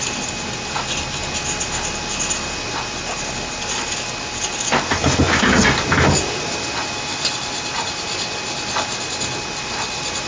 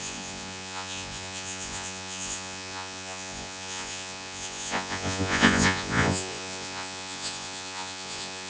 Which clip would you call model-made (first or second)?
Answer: second